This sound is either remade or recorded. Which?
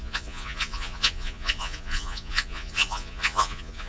remade